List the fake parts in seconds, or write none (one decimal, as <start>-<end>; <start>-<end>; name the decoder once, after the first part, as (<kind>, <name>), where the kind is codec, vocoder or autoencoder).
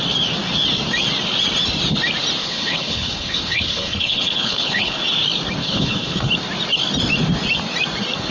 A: 2.4-5.0 (codec, HILCodec); 5.6-6.3